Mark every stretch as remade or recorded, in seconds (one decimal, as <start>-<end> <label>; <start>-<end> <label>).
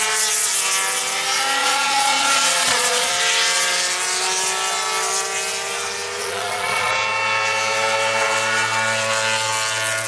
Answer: 0.0-1.6 recorded; 1.6-3.1 remade; 3.1-6.2 recorded; 6.2-6.9 remade; 6.9-10.1 recorded